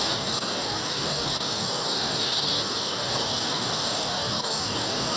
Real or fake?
fake